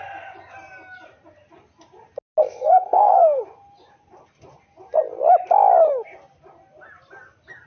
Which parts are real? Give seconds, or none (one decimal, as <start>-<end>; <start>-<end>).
0.0-2.4; 3.4-7.7